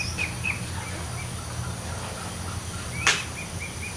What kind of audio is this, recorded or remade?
recorded